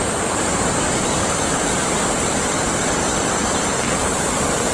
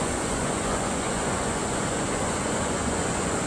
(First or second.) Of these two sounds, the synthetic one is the second